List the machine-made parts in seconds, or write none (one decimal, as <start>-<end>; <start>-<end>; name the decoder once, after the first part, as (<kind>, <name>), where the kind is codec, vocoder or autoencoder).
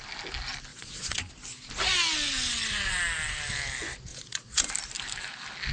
0.7-1.3 (vocoder, Vocos); 4.1-4.7